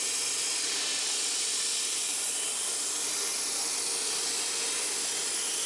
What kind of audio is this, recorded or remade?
recorded